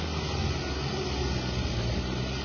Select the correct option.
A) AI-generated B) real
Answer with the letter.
B